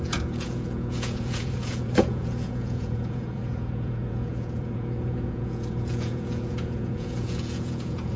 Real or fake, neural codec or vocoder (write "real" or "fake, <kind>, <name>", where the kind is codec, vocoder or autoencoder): fake, vocoder, Vocos